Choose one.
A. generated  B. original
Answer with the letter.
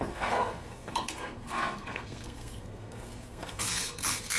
A